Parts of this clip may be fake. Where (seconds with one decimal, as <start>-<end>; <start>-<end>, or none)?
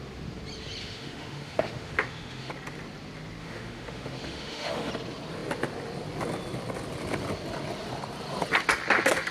0.8-2.5; 3.4-4.9